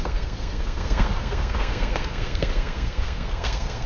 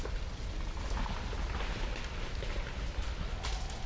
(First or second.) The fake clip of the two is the first